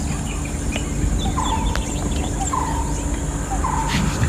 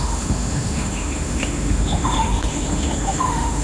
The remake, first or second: second